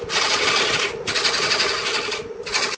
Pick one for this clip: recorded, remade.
recorded